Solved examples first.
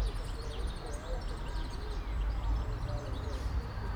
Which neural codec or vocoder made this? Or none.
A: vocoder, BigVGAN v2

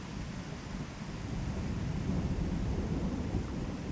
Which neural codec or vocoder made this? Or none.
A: none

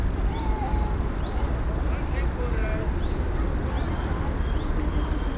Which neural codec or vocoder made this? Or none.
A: none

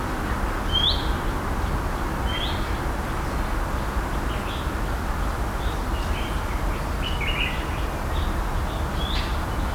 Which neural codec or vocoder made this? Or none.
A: none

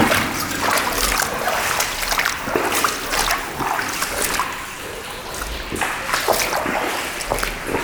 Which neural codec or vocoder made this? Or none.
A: none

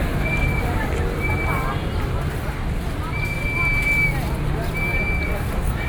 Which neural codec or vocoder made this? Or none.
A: none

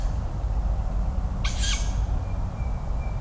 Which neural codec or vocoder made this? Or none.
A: none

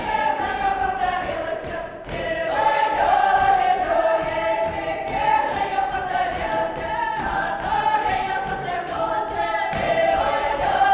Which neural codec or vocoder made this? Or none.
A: vocoder, BigVGAN v2